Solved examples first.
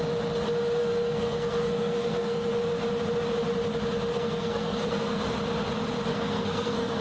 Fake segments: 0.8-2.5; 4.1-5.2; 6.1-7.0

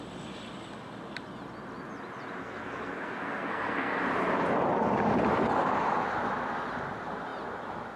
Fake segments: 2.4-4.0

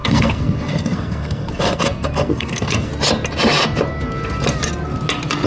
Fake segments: 0.0-2.9

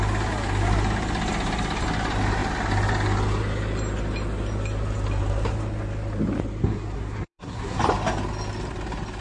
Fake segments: 6.6-7.8

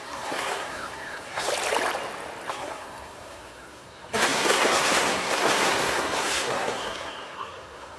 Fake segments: 0.0-1.5; 2.5-8.0

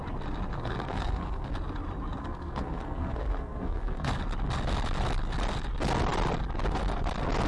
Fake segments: 0.5-1.5; 2.2-4.1